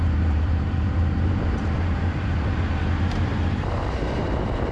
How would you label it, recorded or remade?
remade